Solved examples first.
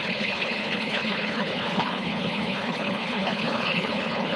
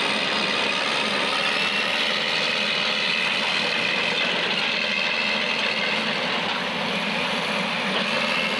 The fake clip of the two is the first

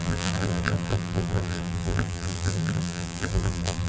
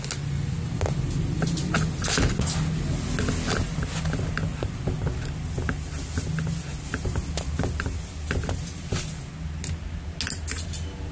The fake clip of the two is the first